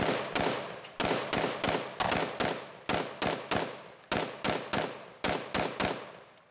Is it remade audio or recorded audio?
recorded